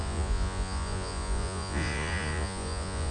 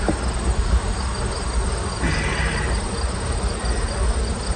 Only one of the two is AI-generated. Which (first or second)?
first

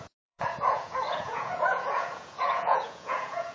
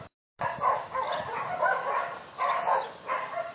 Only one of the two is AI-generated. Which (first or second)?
first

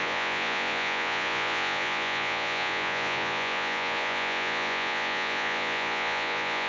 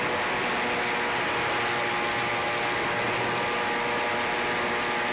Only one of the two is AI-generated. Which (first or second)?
first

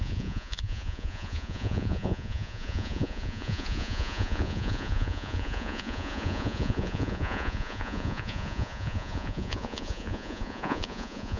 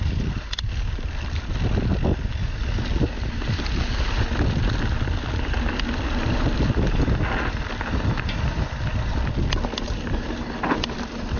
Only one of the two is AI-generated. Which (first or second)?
first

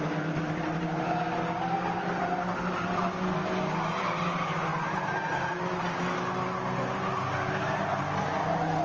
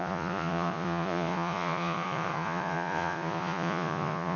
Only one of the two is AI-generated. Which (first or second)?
second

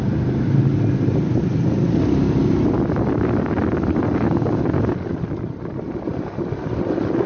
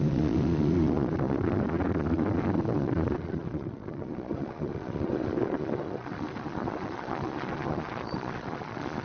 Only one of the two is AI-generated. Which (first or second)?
second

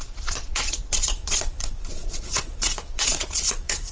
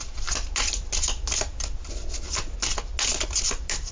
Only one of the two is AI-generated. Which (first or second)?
first